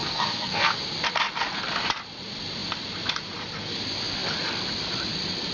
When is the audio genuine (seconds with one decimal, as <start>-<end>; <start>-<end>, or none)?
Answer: 0.8-5.5